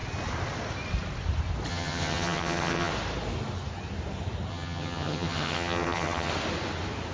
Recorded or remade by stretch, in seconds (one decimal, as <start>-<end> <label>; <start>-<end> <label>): 0.0-1.7 recorded; 1.7-2.9 remade; 2.9-4.5 recorded; 4.5-6.3 remade; 6.3-7.1 recorded